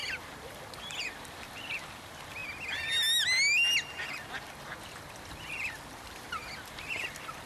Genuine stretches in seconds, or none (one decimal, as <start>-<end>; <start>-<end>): 2.4-5.3